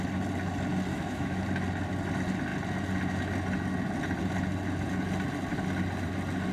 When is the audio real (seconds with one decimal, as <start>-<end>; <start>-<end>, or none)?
0.0-0.9; 1.4-6.5